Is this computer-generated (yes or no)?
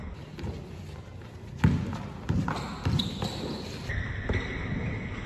no